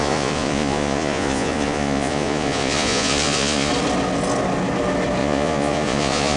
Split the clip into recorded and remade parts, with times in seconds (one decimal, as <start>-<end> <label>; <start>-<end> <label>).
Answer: 0.0-3.7 remade; 3.7-5.2 recorded; 5.2-6.4 remade